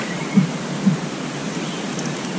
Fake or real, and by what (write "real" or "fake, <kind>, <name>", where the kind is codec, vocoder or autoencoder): real